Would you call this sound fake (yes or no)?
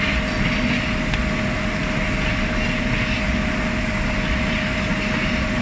no